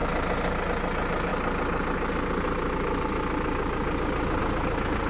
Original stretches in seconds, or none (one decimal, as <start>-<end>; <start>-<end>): 0.0-5.1